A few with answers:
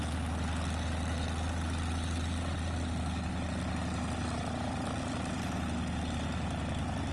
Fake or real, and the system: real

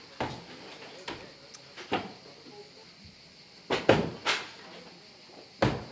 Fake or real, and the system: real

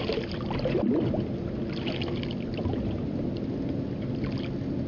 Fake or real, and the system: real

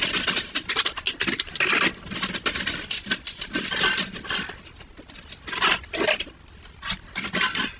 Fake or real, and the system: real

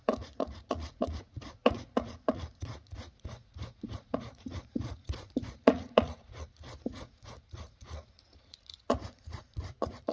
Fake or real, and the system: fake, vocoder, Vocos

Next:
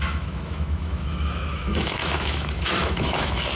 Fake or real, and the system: fake, autoencoder, DAC-VAE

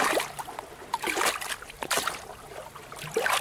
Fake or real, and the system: real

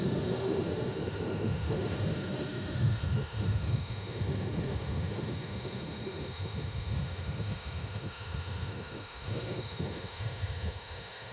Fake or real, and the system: fake, autoencoder, DAC-VAE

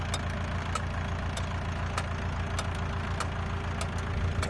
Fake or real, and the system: real